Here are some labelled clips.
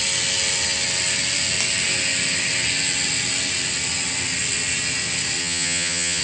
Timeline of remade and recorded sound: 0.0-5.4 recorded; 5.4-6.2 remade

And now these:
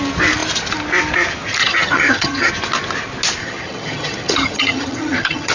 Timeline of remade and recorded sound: 0.0-1.6 recorded; 1.6-2.5 remade; 2.5-3.4 recorded; 3.4-5.5 remade

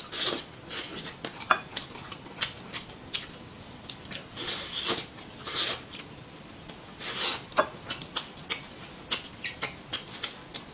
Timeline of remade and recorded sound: 0.0-10.7 recorded

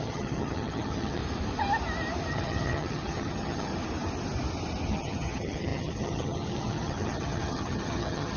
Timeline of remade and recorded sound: 0.0-1.2 remade; 1.2-2.3 recorded; 2.3-3.7 remade; 3.7-4.9 recorded; 4.9-8.4 remade

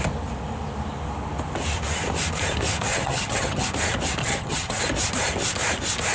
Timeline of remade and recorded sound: 0.0-2.9 recorded; 2.9-3.7 remade; 3.7-4.2 recorded; 4.2-4.8 remade; 4.8-6.1 recorded

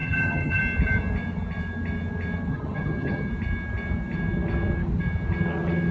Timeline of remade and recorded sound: 0.0-0.6 remade; 0.6-2.5 recorded; 2.5-3.3 remade; 3.3-5.9 recorded